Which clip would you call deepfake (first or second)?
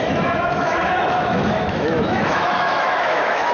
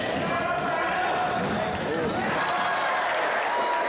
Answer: first